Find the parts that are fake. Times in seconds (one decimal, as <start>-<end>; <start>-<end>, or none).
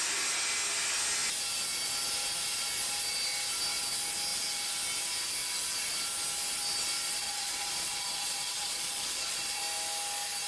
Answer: 7.2-9.6